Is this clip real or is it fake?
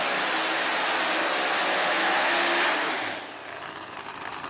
real